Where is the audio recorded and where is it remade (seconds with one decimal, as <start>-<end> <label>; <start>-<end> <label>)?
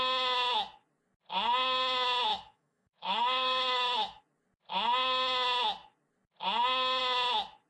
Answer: 0.0-2.3 recorded; 2.3-4.2 remade; 4.2-7.7 recorded